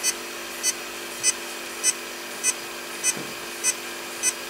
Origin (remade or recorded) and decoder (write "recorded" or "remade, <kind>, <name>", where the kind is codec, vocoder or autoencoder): recorded